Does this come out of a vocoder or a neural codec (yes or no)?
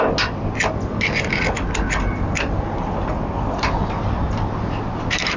no